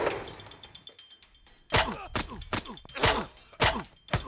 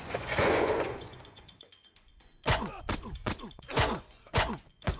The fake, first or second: second